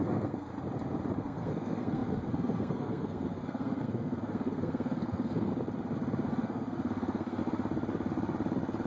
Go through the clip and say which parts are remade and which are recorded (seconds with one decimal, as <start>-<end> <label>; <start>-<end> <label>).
0.0-0.5 remade; 0.5-1.2 recorded; 1.2-5.5 remade; 5.5-6.3 recorded; 6.3-7.4 remade; 7.4-8.9 recorded